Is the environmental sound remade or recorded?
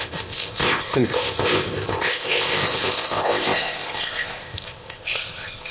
remade